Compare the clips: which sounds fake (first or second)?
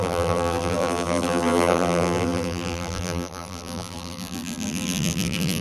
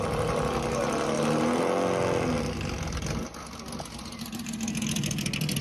first